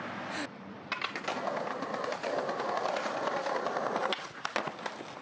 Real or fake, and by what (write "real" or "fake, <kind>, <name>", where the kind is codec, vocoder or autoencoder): real